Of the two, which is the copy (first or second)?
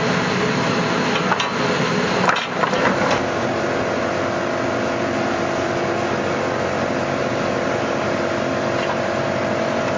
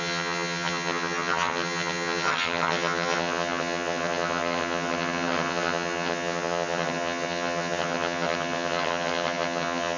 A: second